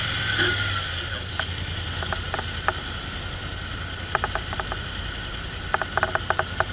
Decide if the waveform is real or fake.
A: real